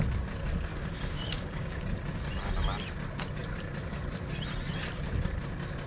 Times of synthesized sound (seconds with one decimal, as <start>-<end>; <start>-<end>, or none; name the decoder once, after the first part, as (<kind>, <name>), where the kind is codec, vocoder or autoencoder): 0.7-1.8 (codec, DAC)